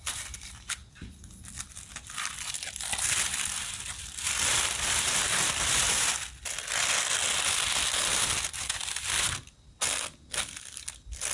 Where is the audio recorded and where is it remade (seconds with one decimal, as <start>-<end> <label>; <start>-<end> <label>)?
0.0-11.3 recorded